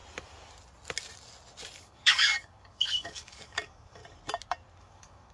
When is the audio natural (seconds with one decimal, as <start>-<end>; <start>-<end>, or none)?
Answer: 0.0-1.8; 4.0-4.8